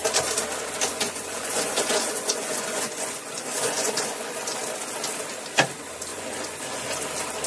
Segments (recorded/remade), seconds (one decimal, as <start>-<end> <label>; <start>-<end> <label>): 0.0-0.9 recorded; 0.9-4.6 remade; 4.6-6.1 recorded; 6.1-7.0 remade; 7.0-7.5 recorded